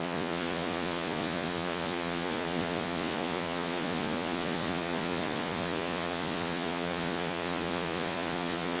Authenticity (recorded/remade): remade